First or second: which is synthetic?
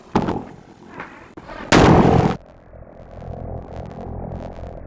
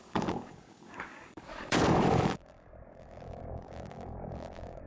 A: second